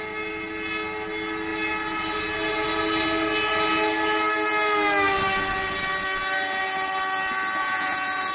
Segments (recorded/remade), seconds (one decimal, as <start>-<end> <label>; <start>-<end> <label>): 0.0-7.6 recorded; 7.6-8.3 remade